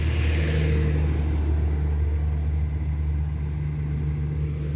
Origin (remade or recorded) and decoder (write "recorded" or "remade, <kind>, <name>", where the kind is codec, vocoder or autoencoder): recorded